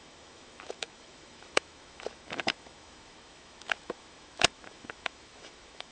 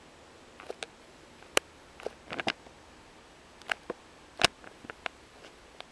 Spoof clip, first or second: first